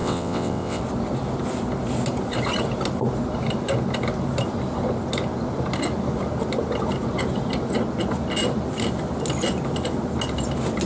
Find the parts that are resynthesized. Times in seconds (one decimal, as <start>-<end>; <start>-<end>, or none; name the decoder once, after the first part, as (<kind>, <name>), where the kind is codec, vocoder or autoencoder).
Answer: 0.0-0.8 (vocoder, WaveNeXt)

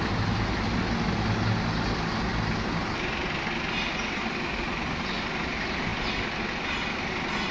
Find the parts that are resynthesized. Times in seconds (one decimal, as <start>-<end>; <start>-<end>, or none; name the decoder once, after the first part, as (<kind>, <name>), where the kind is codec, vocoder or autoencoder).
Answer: none

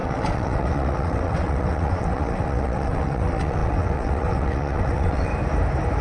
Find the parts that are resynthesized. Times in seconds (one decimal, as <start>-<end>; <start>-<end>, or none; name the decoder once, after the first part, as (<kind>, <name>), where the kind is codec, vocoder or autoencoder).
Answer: 0.0-5.3 (vocoder, WaveNeXt)

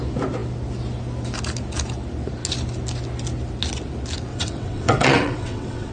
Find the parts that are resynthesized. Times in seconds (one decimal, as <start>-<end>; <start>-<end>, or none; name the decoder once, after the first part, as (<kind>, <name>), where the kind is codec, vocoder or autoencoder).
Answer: 4.3-5.9 (vocoder, WaveNeXt)

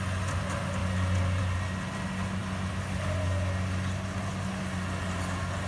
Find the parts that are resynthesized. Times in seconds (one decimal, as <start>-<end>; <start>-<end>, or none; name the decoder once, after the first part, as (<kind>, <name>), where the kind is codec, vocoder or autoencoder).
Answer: none

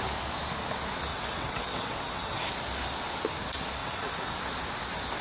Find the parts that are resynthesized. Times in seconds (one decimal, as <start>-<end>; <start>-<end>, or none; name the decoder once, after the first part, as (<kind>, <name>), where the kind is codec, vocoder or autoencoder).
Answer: 1.1-2.5 (vocoder, WaveNeXt); 3.8-4.4

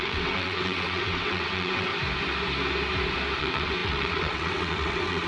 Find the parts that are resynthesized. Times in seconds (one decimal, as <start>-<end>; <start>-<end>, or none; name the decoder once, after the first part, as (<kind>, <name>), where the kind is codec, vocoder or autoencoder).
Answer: 0.0-1.9 (vocoder, WaveNeXt); 3.4-5.3